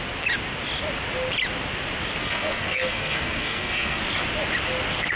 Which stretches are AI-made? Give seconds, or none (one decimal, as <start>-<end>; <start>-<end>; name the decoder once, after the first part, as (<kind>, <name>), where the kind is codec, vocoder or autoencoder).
2.2-4.0 (codec, SNAC)